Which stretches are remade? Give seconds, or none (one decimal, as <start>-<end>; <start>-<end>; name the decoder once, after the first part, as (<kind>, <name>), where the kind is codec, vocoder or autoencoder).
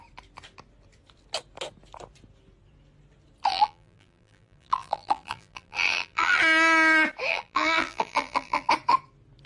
3.5-6.4 (vocoder, BigVGAN v2); 7.3-8.7